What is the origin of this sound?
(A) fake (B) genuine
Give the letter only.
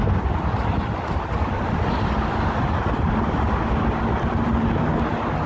B